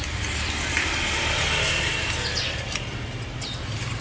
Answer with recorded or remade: recorded